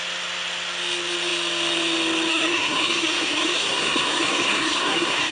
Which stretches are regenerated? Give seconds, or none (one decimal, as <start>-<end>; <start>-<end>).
2.3-5.3